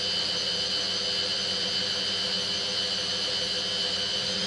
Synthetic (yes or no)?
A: no